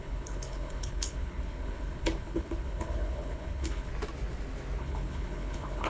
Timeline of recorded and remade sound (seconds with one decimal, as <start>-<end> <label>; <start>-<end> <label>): 0.0-3.9 remade; 3.9-4.8 recorded; 4.8-5.9 remade